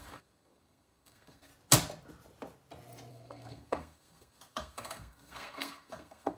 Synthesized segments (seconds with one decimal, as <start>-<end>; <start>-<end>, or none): 0.0-1.5; 3.1-6.4